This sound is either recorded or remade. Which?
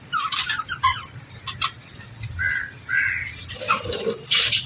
remade